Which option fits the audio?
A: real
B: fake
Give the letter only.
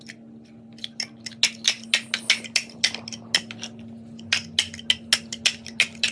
A